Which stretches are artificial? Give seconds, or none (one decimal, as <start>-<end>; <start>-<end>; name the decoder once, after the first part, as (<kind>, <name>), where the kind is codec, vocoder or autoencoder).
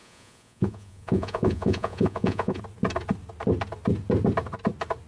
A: 0.0-2.6 (vocoder, Vocos)